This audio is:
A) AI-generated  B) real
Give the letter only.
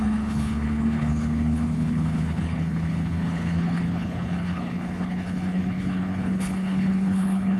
A